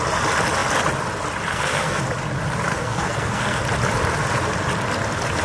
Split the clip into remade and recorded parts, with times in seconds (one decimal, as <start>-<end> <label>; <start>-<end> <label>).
0.0-1.5 recorded; 1.5-2.0 remade; 2.0-2.7 recorded; 2.7-3.6 remade; 3.6-5.4 recorded